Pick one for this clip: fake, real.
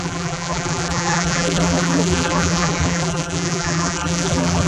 fake